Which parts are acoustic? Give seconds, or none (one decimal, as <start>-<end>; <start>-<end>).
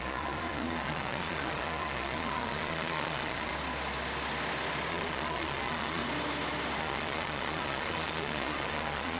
3.5-4.9; 6.0-6.8